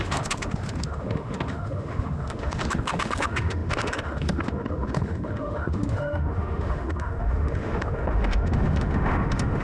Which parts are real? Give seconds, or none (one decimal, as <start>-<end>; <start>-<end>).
none